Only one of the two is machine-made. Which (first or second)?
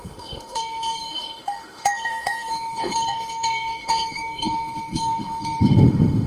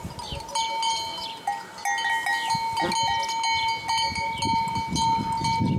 first